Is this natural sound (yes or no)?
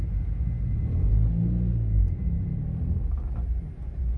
yes